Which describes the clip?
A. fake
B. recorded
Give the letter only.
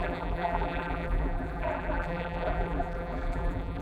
A